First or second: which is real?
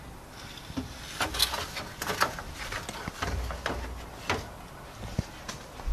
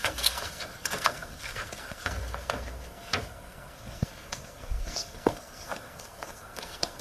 first